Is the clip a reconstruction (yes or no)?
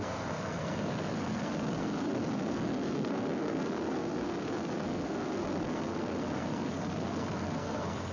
yes